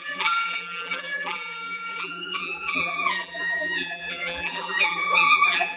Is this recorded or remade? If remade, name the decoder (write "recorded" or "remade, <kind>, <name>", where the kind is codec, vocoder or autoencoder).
remade, vocoder, BigVGAN v2